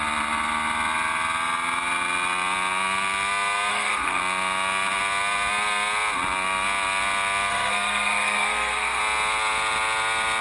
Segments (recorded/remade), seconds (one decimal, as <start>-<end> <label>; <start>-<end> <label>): 0.0-3.7 recorded; 3.7-4.2 remade; 4.2-7.5 recorded; 7.5-9.0 remade; 9.0-10.4 recorded